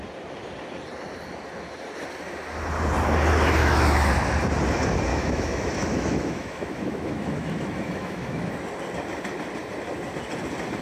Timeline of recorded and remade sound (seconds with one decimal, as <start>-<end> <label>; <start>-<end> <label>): 0.0-3.6 recorded; 3.6-4.1 remade; 4.1-5.1 recorded; 5.1-8.5 remade; 8.5-10.8 recorded